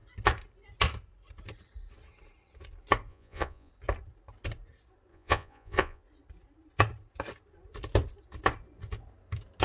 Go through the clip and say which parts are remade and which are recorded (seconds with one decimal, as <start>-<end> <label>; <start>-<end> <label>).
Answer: 0.0-3.1 recorded; 3.1-3.7 remade; 3.7-5.1 recorded; 5.1-6.0 remade; 6.0-9.6 recorded